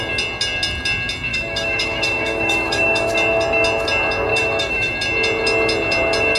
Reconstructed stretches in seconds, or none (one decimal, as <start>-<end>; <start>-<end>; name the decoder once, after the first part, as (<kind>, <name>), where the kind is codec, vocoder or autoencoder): 1.3-3.1 (autoencoder, DAC-VAE); 4.3-4.9